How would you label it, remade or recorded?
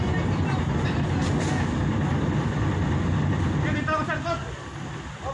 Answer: recorded